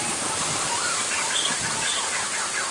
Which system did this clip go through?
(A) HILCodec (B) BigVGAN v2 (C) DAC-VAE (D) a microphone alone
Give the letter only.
D